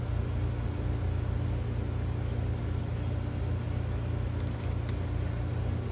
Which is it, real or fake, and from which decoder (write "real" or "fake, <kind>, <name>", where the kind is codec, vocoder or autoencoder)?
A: real